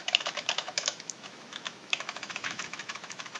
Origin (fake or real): fake